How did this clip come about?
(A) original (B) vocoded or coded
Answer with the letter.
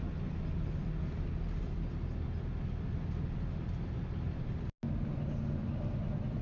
A